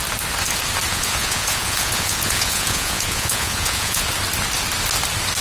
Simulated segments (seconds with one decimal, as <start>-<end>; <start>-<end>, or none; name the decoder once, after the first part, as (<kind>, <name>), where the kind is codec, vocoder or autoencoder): 0.9-4.1 (vocoder, Vocos)